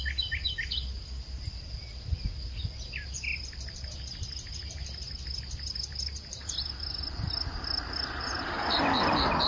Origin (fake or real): real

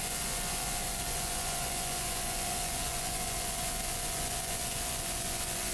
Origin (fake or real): fake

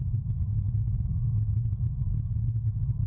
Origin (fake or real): real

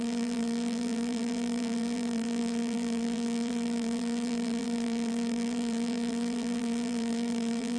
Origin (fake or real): fake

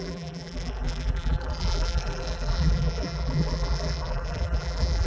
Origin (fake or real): fake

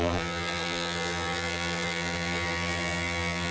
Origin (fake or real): fake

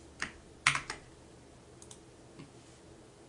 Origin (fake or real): real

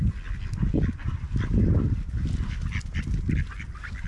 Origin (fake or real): real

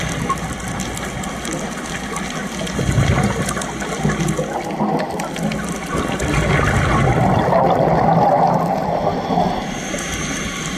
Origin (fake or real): real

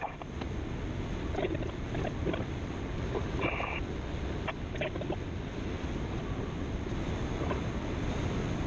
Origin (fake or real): real